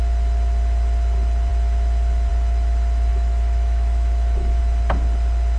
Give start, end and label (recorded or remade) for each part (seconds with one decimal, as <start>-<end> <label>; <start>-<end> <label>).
0.0-3.1 recorded; 3.1-4.6 remade; 4.6-5.6 recorded